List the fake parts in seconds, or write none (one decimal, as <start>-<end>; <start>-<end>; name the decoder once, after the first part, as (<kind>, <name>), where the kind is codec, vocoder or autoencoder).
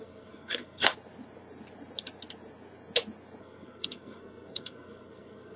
0.0-0.9 (codec, SNAC); 3.4-5.6